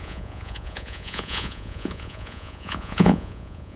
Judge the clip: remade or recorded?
remade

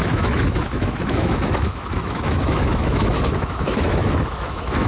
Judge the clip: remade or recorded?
remade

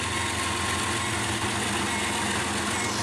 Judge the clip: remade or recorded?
recorded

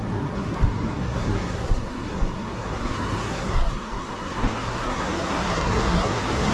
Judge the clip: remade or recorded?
remade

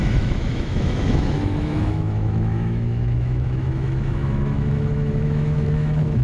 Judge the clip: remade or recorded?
remade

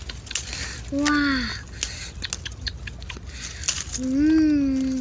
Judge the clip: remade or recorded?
recorded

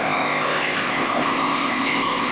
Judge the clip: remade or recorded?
remade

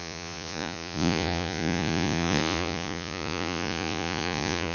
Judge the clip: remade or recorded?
remade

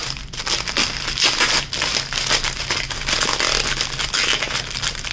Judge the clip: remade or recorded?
recorded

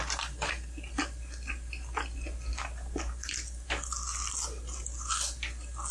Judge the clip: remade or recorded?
recorded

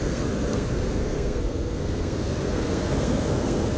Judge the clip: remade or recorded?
remade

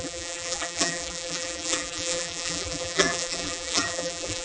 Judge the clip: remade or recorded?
remade